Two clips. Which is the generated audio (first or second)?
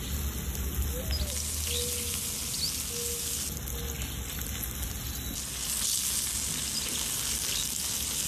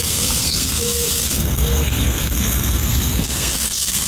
second